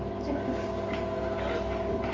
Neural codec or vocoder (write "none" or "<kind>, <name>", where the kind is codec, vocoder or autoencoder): none